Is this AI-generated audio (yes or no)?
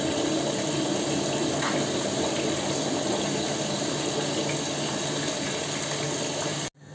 no